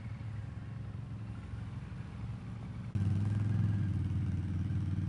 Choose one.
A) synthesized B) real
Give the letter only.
B